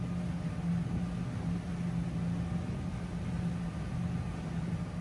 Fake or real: real